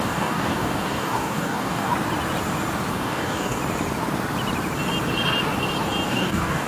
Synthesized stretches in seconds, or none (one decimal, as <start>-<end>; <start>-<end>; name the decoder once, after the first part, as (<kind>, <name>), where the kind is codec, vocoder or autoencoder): 0.0-1.9 (codec, DAC); 2.9-3.6; 6.1-6.7